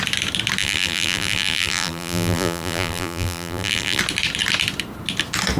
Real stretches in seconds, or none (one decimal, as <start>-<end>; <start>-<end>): 0.0-0.6; 4.0-5.6